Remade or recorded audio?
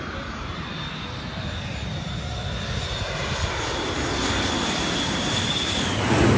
recorded